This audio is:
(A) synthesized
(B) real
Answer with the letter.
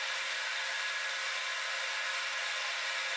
B